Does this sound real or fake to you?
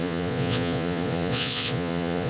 fake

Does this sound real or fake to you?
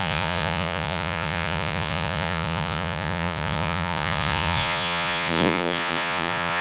fake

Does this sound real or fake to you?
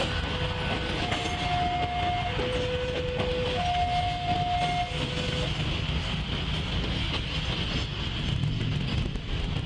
real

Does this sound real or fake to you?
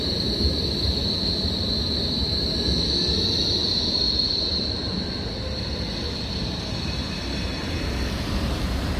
real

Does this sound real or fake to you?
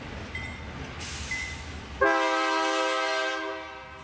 real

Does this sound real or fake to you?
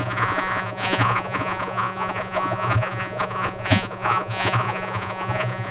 fake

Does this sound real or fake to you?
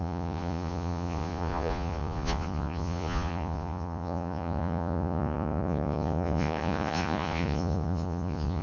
fake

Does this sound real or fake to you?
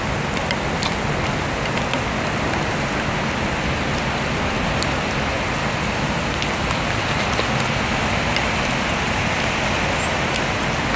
real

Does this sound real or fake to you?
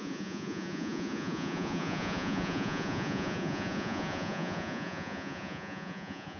fake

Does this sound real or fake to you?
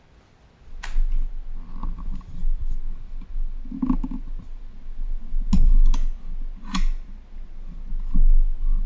real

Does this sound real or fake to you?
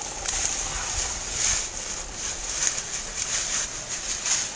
real